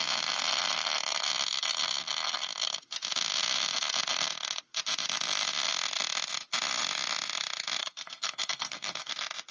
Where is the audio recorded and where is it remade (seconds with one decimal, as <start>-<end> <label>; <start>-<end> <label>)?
0.0-7.8 recorded; 7.8-9.1 remade; 9.1-9.5 recorded